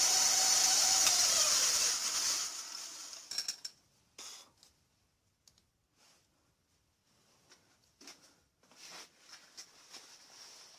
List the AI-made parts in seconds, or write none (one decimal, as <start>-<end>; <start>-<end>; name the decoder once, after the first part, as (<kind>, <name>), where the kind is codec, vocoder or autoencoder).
0.6-1.1 (autoencoder, DAC-VAE)